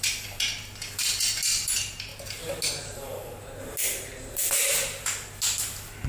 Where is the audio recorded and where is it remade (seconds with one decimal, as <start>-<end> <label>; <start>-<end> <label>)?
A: 0.0-6.1 recorded